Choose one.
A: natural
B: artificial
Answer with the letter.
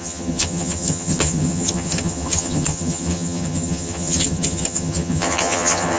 B